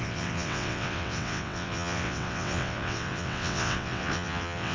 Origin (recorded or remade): remade